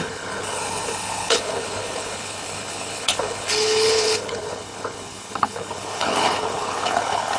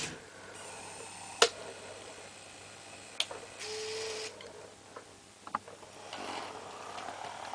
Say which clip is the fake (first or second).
first